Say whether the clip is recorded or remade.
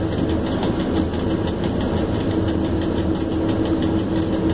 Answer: recorded